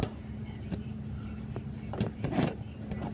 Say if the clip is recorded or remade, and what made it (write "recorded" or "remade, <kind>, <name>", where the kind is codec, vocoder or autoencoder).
recorded